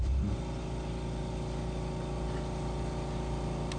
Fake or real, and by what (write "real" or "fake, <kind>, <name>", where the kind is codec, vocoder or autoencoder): real